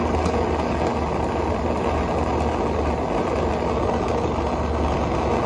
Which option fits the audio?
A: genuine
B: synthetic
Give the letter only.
A